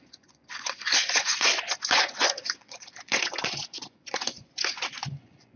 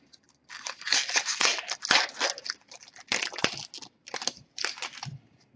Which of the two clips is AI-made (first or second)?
first